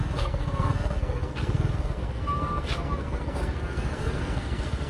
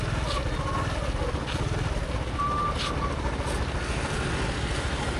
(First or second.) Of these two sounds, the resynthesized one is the first